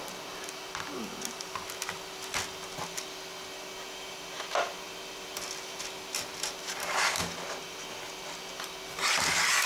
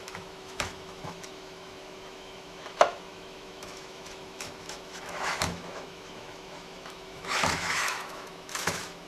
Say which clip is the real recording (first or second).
first